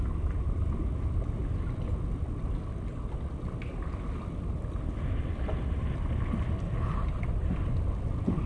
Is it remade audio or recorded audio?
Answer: recorded